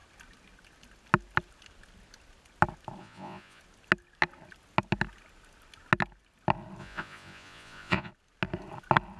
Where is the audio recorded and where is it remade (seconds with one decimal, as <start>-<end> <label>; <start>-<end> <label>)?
0.0-3.0 recorded; 3.0-3.6 remade; 3.6-6.8 recorded; 6.8-8.1 remade; 8.1-9.2 recorded